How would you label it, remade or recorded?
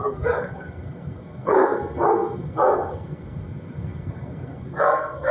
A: remade